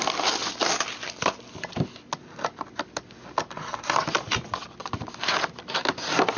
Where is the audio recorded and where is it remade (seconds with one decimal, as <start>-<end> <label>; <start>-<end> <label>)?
0.0-6.4 recorded